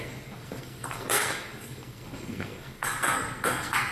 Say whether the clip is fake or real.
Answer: fake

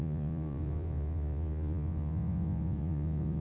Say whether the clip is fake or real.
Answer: fake